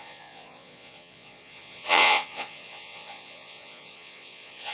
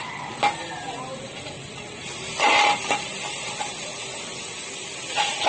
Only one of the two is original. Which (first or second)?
second